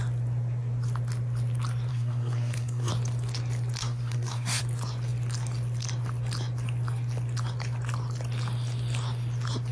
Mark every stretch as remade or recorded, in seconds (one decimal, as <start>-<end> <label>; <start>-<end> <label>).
0.0-1.9 recorded; 1.9-2.9 remade; 2.9-3.8 recorded; 3.8-4.6 remade; 4.6-9.7 recorded